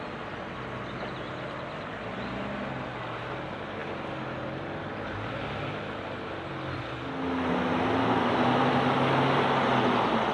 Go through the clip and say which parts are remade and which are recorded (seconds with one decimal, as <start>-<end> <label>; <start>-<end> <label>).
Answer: 0.0-10.3 recorded